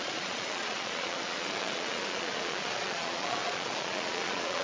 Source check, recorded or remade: remade